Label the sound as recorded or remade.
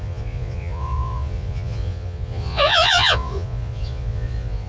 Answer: remade